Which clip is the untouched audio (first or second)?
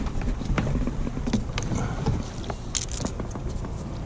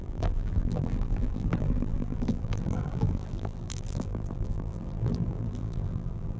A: first